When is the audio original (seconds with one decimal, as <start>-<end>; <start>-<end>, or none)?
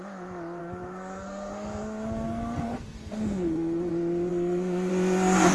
0.0-0.6; 3.9-4.3; 4.9-5.5